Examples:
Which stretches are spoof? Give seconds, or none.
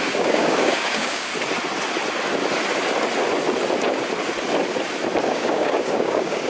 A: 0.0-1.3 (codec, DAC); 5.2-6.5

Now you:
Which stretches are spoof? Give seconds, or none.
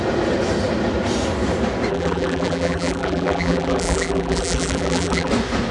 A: 1.9-5.3 (vocoder, BigVGAN v2)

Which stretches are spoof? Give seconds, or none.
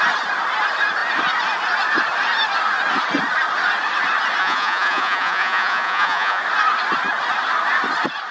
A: 4.4-6.4 (vocoder, Vocos)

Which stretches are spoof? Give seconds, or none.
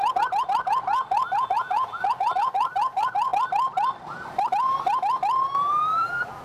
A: 1.6-3.3 (vocoder, BigVGAN v2); 5.9-6.4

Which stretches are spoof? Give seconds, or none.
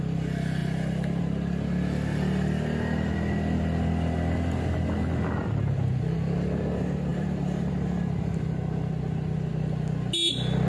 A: 7.1-7.7 (vocoder, BigVGAN v2)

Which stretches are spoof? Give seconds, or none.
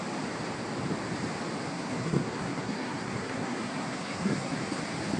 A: 1.7-4.8 (codec, SNAC)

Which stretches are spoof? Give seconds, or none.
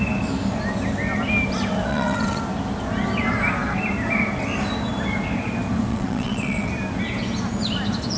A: 1.9-2.4 (vocoder, WaveNeXt); 5.9-6.7